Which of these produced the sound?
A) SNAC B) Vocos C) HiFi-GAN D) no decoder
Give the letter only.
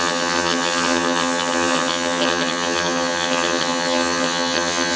C